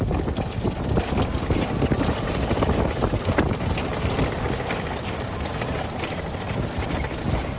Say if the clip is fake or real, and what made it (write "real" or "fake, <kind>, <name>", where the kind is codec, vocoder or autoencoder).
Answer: real